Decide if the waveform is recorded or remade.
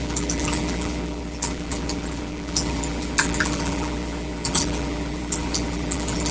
remade